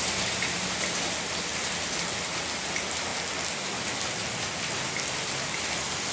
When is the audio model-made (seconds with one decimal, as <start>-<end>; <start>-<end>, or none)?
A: none